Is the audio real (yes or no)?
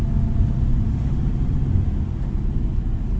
yes